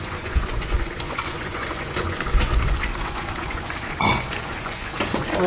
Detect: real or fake fake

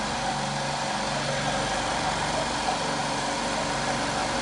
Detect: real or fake real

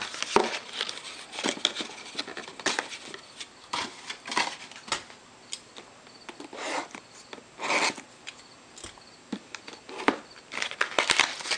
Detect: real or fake real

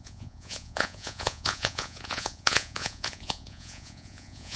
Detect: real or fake fake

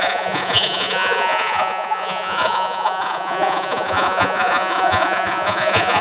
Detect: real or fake fake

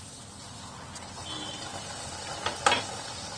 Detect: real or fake real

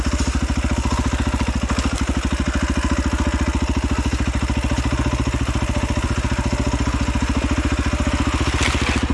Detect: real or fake real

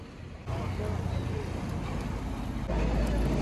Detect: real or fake real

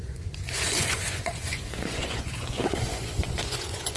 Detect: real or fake fake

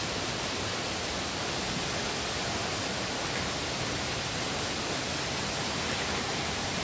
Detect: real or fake real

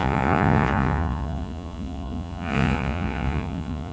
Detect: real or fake fake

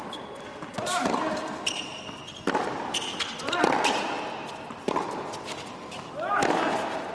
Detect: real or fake real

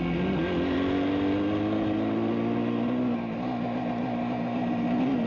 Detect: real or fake real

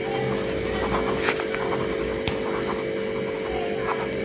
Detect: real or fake real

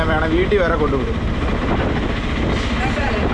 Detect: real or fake real